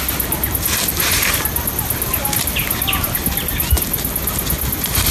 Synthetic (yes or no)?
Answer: no